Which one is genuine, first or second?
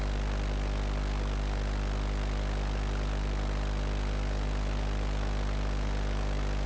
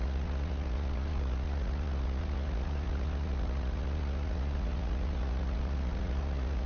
first